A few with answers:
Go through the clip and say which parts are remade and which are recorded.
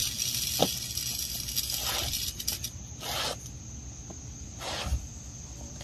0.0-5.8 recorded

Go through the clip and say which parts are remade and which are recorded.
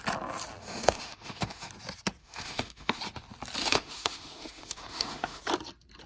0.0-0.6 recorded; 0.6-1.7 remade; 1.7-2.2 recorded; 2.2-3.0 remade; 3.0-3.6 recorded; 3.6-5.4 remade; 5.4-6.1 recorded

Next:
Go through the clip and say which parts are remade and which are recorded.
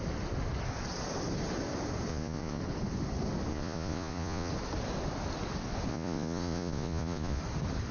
0.0-2.1 recorded; 2.1-2.6 remade; 2.6-3.5 recorded; 3.5-4.5 remade; 4.5-5.9 recorded; 5.9-7.4 remade; 7.4-7.9 recorded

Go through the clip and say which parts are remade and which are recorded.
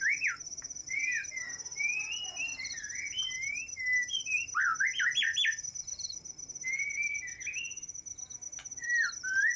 0.0-9.6 recorded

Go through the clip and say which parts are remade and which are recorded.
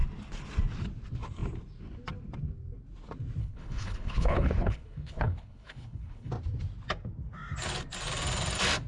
0.0-3.4 recorded; 3.4-6.3 remade; 6.3-8.9 recorded